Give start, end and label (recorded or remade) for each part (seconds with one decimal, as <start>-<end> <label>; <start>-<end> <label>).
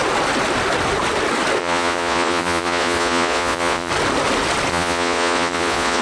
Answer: 0.0-1.6 recorded; 1.6-3.9 remade; 3.9-4.7 recorded; 4.7-6.0 remade